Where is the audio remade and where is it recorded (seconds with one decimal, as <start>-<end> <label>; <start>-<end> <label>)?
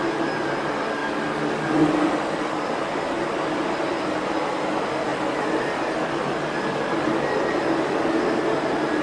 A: 0.0-9.0 recorded